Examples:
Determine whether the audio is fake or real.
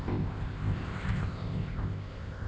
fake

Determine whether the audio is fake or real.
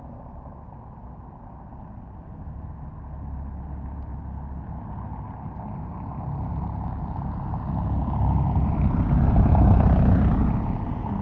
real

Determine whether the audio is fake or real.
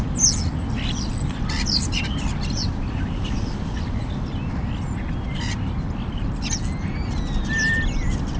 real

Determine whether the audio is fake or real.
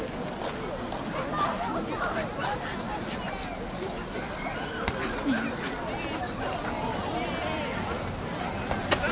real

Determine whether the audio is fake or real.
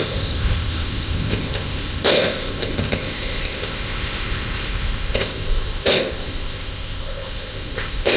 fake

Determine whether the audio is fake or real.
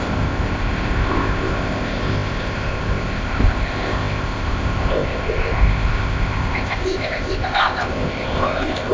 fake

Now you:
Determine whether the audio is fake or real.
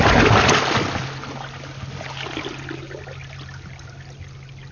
real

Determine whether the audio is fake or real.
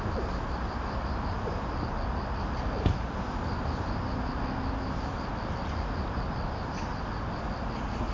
real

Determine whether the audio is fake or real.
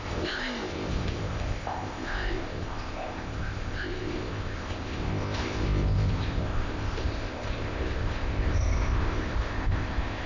fake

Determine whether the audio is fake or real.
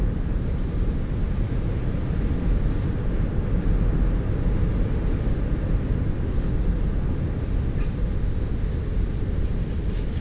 real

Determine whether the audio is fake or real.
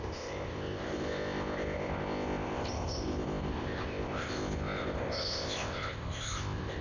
fake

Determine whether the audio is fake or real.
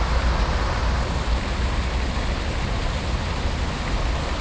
real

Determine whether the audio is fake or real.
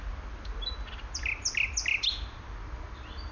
real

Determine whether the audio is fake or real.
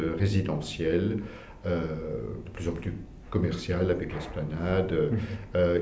real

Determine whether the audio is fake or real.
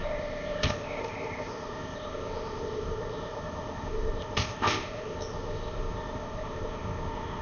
fake